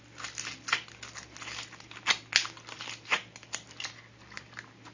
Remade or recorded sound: recorded